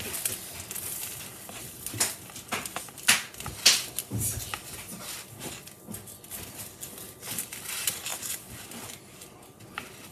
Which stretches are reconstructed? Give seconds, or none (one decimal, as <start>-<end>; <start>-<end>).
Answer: none